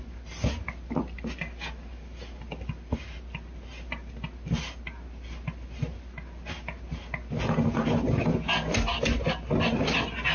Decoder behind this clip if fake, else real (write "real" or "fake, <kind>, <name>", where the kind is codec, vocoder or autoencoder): real